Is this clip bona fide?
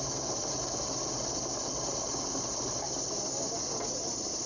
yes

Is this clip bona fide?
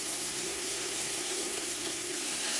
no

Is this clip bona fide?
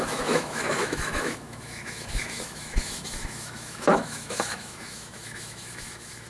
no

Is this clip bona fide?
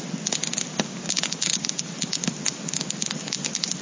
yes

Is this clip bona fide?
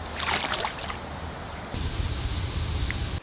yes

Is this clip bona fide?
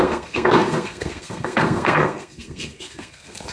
no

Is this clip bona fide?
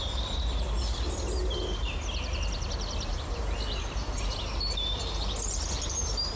yes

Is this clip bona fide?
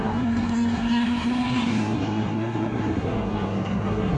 no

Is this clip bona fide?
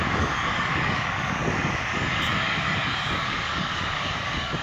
no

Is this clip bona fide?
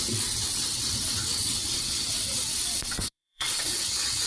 no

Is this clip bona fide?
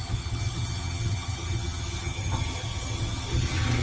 no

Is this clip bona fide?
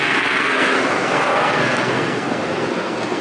no